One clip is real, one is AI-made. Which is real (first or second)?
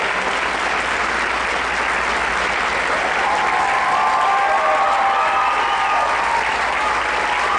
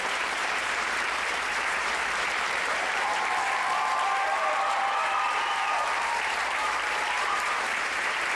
first